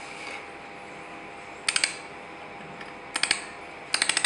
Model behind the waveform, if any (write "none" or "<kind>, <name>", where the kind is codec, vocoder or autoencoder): none